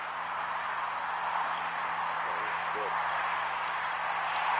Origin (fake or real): real